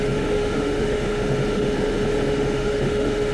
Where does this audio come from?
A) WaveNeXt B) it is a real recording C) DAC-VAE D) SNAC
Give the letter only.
C